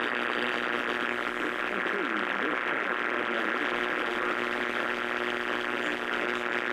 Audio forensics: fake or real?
real